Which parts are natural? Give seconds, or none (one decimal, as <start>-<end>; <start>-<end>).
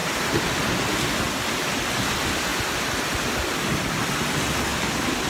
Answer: 0.0-5.3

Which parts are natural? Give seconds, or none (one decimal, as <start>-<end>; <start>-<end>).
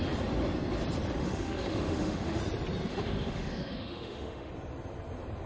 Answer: 0.0-1.2; 2.4-2.9; 4.5-5.5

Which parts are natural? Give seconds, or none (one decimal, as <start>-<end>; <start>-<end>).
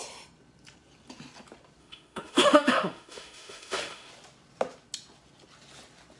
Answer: 0.0-1.8; 4.1-6.2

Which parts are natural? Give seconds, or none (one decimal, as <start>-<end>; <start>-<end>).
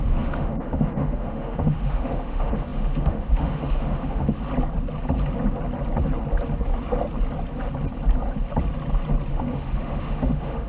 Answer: 4.5-9.3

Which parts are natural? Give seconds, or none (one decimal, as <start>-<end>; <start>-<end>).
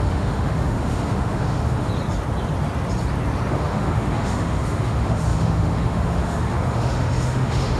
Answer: 1.9-3.5